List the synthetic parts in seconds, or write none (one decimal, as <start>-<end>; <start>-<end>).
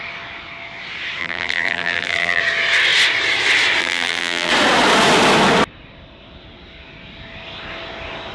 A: 1.2-2.4; 3.8-4.5